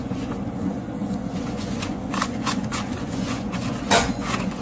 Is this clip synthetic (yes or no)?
yes